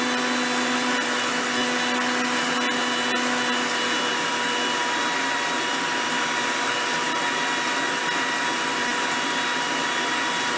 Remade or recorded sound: recorded